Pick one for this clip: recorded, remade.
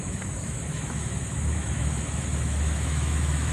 remade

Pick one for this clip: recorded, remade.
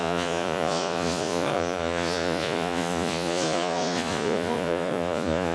remade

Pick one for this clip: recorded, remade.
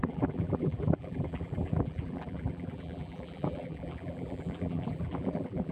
remade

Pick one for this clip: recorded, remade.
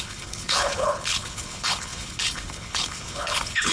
remade